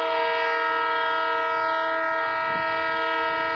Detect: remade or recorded recorded